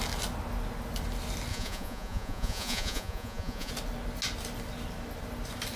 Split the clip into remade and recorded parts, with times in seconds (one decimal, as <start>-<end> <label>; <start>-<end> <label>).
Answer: 0.0-1.5 recorded; 1.5-3.7 remade; 3.7-5.8 recorded